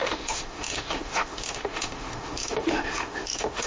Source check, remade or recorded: remade